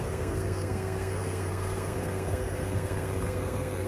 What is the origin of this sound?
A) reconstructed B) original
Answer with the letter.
A